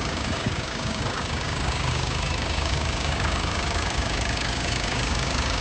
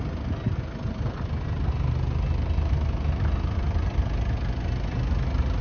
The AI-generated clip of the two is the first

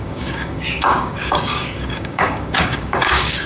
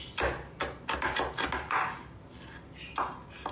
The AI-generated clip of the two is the first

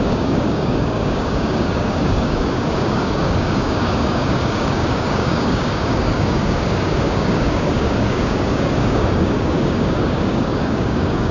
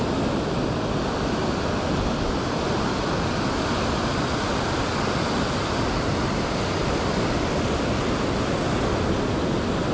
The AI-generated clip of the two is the first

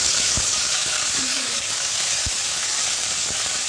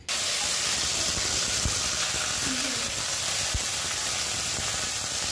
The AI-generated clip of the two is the first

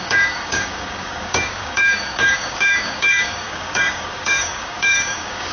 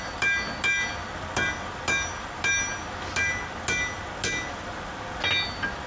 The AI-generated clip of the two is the first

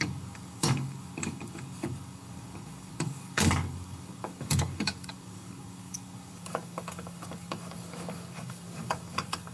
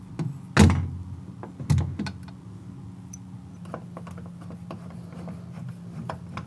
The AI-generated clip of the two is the first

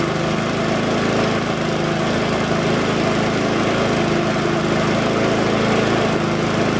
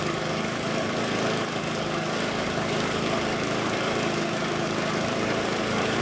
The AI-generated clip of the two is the second